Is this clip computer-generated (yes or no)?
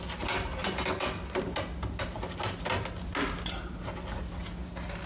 no